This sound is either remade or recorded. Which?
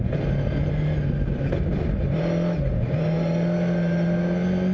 recorded